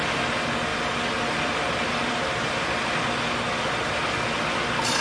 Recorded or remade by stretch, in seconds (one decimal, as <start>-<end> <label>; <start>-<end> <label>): 0.0-5.0 recorded